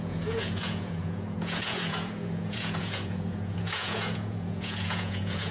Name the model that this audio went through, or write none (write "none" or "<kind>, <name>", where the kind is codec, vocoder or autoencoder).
vocoder, Vocos